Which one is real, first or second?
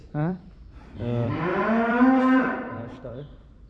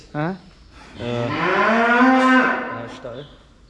second